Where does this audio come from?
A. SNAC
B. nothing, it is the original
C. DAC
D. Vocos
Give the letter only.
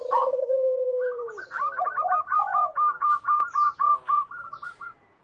D